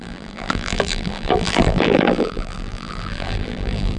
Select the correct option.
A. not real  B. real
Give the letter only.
A